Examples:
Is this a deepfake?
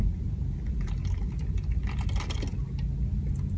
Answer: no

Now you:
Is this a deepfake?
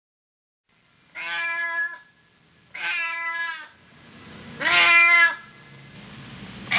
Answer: no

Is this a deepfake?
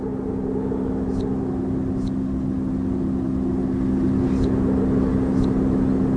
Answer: no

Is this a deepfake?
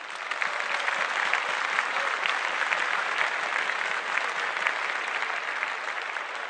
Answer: no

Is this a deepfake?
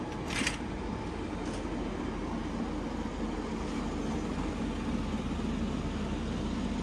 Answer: no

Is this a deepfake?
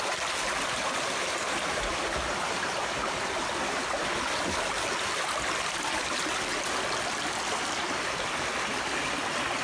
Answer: no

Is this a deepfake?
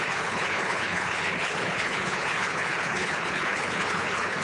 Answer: yes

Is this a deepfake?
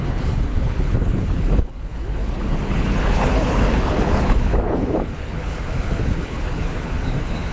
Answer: yes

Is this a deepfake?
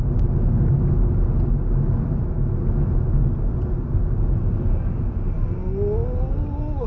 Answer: no